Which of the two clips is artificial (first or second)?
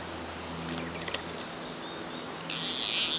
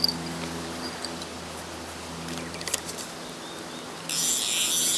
second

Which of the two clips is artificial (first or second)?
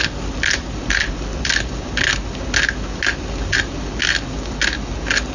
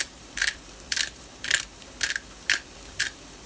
second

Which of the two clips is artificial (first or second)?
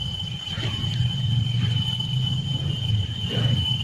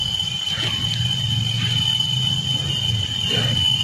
first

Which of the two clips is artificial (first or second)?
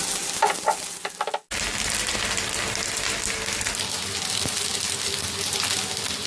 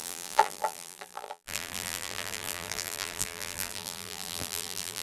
second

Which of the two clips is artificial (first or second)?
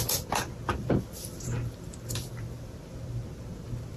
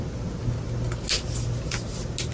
first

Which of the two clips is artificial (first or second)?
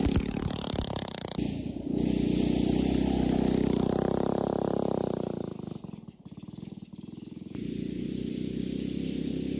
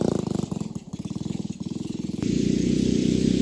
second